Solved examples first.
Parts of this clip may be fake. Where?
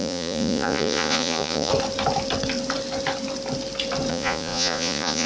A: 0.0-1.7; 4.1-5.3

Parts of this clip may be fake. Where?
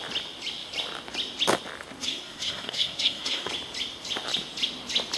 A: 2.0-3.5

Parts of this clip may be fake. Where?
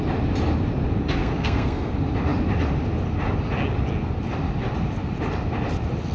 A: 1.2-1.9